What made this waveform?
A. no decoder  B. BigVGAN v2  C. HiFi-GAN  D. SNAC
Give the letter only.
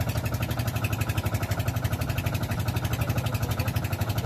A